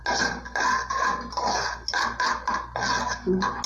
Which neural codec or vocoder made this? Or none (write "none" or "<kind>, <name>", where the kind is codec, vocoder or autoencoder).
none